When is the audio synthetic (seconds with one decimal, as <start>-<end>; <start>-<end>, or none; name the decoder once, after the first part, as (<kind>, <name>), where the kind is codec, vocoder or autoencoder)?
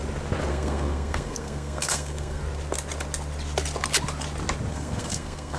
0.5-2.4 (codec, SNAC); 4.7-5.6